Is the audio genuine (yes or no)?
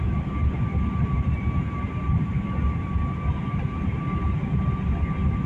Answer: yes